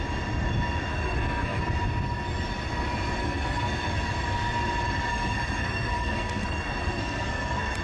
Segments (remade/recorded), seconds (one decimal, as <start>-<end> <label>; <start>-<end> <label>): 0.0-0.9 recorded; 0.9-1.6 remade; 1.6-3.2 recorded; 3.2-3.9 remade; 3.9-5.1 recorded; 5.1-7.8 remade